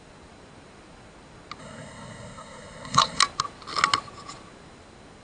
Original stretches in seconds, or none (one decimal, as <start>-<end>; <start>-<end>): 0.0-1.6; 3.2-5.2

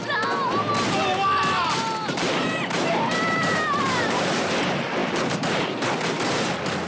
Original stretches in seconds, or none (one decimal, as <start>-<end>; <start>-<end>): 0.0-2.0; 4.5-5.0; 6.1-6.9

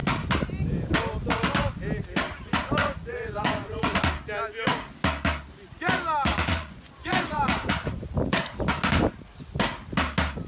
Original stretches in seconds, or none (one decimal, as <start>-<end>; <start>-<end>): 0.0-2.8; 4.0-6.3; 7.7-10.5

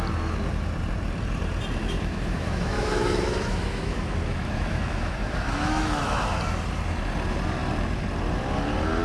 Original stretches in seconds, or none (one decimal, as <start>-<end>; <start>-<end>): 0.0-1.8; 6.4-9.0

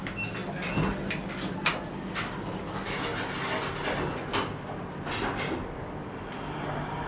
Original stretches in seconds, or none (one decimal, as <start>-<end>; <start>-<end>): 0.0-7.1

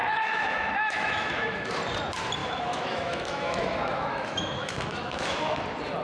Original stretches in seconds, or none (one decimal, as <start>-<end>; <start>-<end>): 1.7-2.4; 5.6-6.0

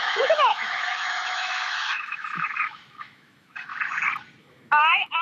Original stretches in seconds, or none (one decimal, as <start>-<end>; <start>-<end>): 3.7-4.4